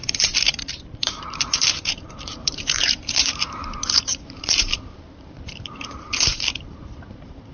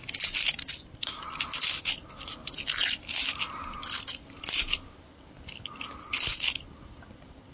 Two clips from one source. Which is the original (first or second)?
second